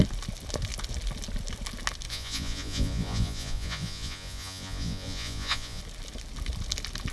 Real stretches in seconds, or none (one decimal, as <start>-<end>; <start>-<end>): 0.0-2.1; 5.8-7.1